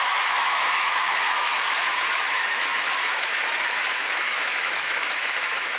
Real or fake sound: fake